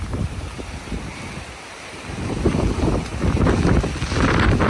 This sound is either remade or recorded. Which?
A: remade